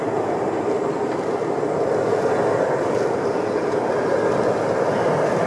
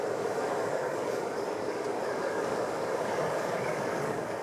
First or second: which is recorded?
first